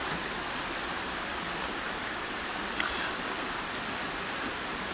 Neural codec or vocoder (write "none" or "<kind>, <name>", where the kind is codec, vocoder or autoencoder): none